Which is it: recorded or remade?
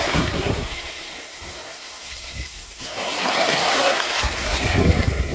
remade